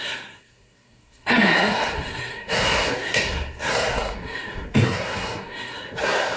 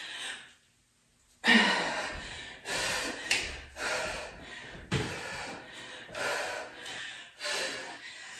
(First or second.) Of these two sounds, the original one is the second